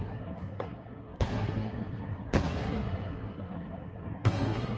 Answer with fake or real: fake